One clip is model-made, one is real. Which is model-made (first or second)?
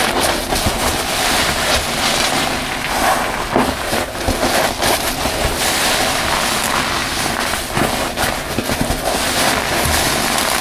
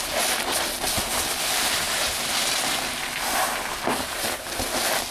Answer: second